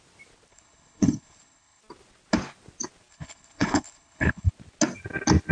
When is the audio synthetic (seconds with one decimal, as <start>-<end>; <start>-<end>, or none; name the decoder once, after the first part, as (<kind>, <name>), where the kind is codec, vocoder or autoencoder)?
0.5-1.8 (codec, HILCodec); 3.1-4.5